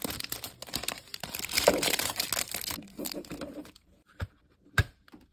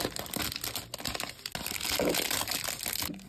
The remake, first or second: first